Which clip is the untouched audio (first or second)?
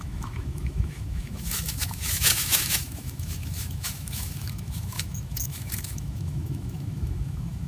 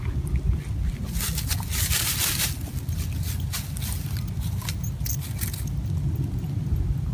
second